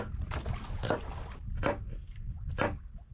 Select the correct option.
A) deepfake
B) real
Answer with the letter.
B